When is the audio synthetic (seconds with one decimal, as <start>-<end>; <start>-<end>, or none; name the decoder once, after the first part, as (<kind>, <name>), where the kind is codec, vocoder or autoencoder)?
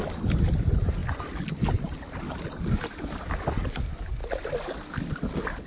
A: none